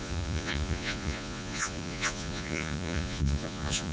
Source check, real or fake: fake